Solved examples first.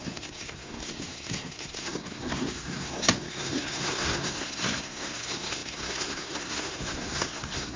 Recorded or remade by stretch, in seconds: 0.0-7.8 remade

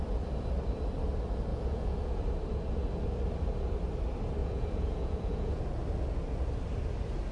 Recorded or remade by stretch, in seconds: 0.0-1.5 recorded; 1.5-2.2 remade; 2.2-4.4 recorded; 4.4-5.6 remade; 5.6-7.3 recorded

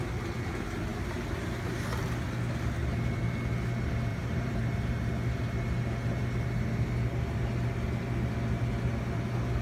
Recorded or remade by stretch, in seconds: 0.0-4.1 recorded; 4.1-4.6 remade; 4.6-9.6 recorded